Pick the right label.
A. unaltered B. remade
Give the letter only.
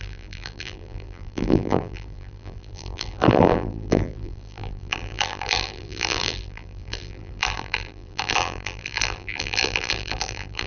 B